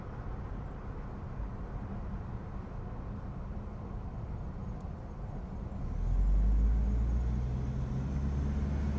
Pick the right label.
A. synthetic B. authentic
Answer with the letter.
B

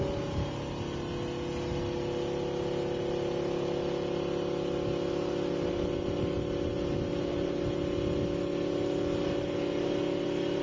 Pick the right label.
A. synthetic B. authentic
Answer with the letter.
B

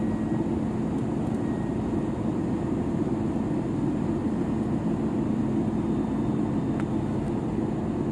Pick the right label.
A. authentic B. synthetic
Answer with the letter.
A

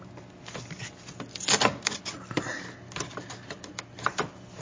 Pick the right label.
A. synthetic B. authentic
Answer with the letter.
B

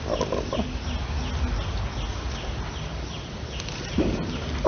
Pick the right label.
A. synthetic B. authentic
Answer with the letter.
B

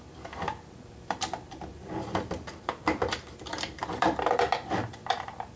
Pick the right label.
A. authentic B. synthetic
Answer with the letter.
B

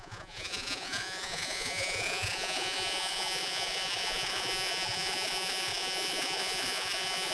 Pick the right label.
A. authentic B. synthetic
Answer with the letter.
B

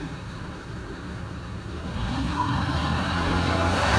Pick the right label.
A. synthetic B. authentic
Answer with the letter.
A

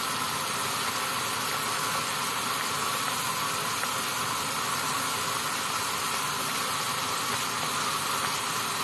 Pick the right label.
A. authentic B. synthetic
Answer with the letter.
A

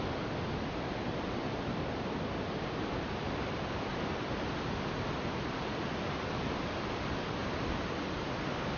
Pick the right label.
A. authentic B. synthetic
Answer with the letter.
A